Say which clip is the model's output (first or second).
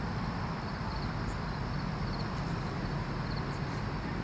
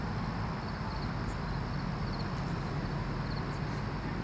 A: first